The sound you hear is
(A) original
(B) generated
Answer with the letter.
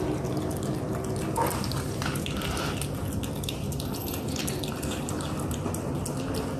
A